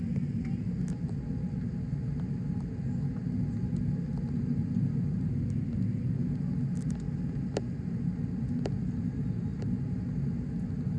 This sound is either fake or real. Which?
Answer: real